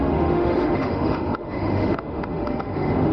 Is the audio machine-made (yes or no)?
yes